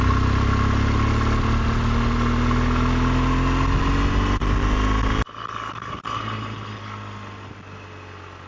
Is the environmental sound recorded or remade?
recorded